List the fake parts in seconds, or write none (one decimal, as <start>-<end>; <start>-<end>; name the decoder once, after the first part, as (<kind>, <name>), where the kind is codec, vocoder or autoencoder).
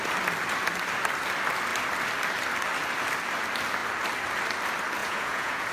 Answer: 5.0-5.7 (vocoder, Vocos)